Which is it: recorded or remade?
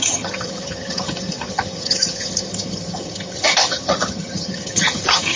remade